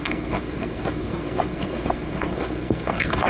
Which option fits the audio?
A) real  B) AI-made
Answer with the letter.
B